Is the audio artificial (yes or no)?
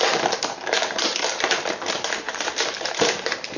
yes